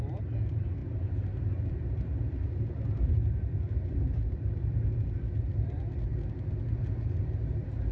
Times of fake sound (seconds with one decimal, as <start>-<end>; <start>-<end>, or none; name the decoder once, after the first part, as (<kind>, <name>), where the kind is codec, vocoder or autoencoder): 0.0-6.1 (vocoder, BigVGAN v2); 6.8-7.9